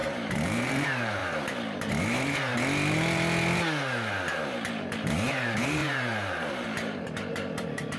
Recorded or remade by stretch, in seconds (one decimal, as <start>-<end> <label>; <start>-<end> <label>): 0.0-1.2 remade; 1.2-1.9 recorded; 1.9-2.5 remade; 2.5-4.7 recorded; 4.7-8.0 remade